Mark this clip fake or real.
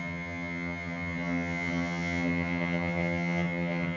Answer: fake